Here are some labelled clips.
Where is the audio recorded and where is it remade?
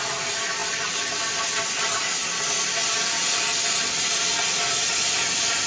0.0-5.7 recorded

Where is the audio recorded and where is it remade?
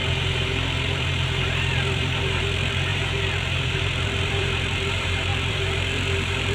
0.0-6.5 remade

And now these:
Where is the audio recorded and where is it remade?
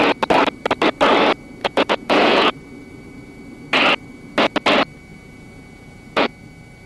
0.0-1.6 recorded; 1.6-2.5 remade; 2.5-5.1 recorded; 5.1-6.3 remade; 6.3-6.9 recorded